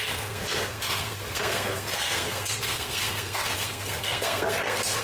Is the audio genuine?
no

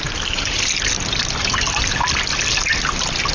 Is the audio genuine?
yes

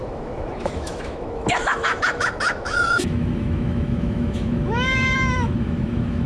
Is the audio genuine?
no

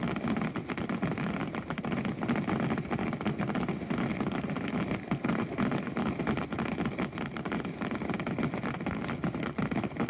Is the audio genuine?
yes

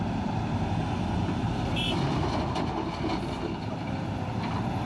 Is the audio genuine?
yes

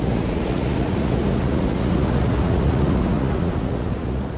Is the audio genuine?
no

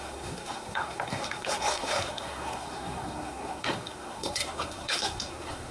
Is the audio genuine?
no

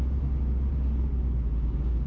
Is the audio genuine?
yes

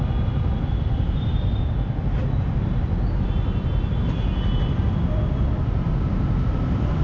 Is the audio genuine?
yes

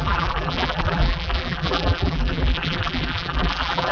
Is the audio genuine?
no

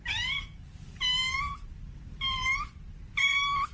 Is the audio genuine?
no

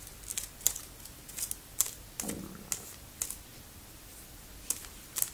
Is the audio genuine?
yes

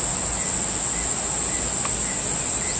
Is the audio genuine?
yes